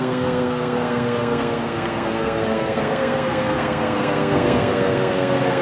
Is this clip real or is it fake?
fake